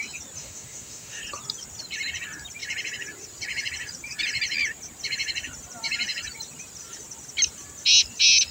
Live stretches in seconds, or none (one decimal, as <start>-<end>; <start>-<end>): 0.0-0.4; 1.2-8.5